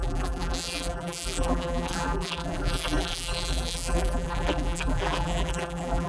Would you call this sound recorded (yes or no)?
no